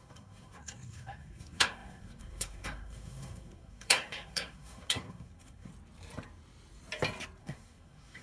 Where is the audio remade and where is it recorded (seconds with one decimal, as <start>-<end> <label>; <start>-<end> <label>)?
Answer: 0.0-5.7 remade; 5.7-7.4 recorded; 7.4-8.2 remade